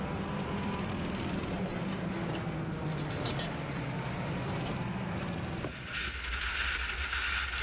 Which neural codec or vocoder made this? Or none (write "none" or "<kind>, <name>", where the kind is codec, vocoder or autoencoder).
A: none